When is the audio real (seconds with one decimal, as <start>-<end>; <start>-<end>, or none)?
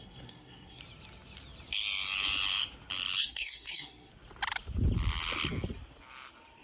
0.8-3.2; 4.1-6.6